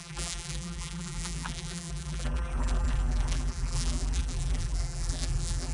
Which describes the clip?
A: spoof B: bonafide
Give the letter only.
A